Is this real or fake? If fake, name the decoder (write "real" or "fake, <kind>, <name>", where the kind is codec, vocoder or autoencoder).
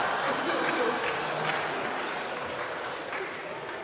real